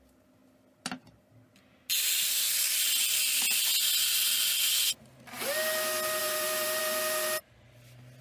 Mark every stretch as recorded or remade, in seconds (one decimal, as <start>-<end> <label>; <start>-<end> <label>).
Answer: 0.0-6.2 recorded; 6.2-6.8 remade; 6.8-8.2 recorded